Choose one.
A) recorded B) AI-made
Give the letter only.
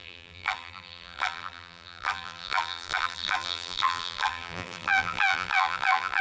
B